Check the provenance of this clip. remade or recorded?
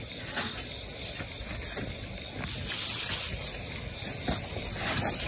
recorded